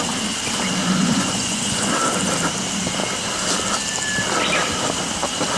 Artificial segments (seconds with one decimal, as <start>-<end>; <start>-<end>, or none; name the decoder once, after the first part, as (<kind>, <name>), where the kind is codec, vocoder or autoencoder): 0.8-1.9 (vocoder, Vocos)